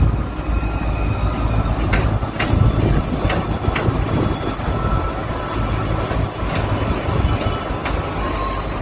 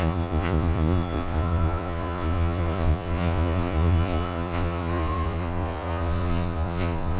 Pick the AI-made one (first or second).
second